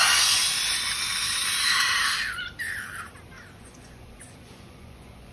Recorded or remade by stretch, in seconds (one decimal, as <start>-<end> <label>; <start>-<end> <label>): 0.0-0.4 remade; 0.4-3.6 recorded; 3.6-5.3 remade

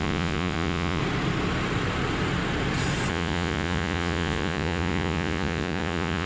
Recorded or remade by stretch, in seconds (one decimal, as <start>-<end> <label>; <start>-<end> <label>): 0.0-1.0 remade; 1.0-3.1 recorded; 3.1-6.3 remade

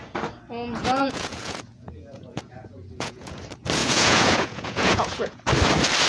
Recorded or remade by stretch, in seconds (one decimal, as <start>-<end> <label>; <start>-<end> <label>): 0.0-0.8 recorded; 0.8-3.4 remade; 3.4-3.8 recorded; 3.8-5.4 remade; 5.4-6.1 recorded

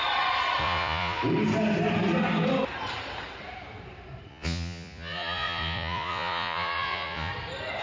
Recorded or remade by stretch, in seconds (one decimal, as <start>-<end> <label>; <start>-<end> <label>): 0.0-0.6 recorded; 0.6-1.2 remade; 1.2-4.3 recorded; 4.3-7.3 remade; 7.3-7.8 recorded

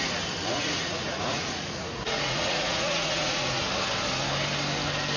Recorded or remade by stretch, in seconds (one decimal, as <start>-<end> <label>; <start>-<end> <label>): 0.0-0.5 recorded; 0.5-3.6 remade; 3.6-5.2 recorded